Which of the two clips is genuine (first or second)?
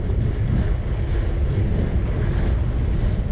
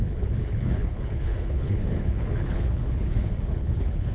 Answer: first